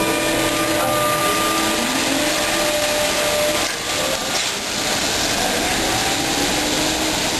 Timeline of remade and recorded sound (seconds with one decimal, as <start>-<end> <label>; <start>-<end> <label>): 0.0-7.4 recorded